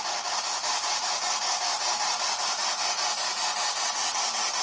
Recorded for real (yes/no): yes